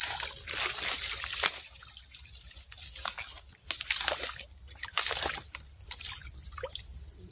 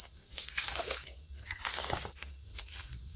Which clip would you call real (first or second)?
first